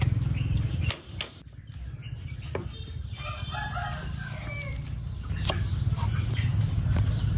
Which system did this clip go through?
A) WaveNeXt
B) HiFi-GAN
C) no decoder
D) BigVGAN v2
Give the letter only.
C